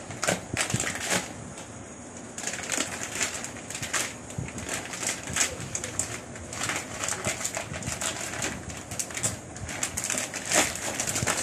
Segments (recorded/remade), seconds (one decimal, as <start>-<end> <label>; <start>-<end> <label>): 0.0-11.4 recorded

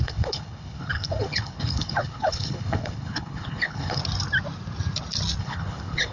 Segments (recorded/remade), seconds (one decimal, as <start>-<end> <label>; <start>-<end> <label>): 0.0-4.0 remade; 4.0-5.4 recorded; 5.4-6.1 remade